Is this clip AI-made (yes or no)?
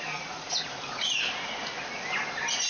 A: no